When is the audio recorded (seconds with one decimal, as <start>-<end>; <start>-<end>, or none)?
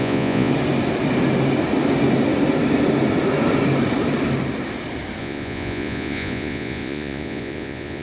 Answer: 0.5-5.2